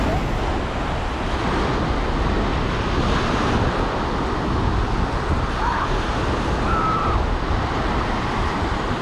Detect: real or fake real